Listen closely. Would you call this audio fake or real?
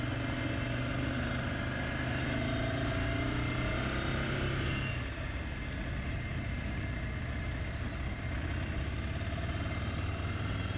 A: real